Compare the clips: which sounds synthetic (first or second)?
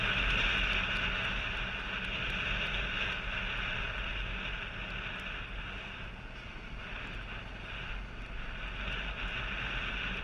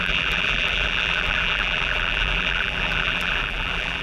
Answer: second